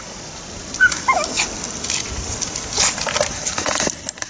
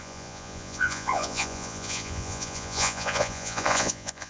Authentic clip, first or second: first